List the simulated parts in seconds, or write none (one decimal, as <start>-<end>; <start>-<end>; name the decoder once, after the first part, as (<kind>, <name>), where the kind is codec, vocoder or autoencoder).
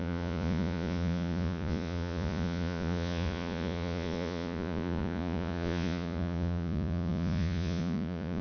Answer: 0.0-8.4 (vocoder, Vocos)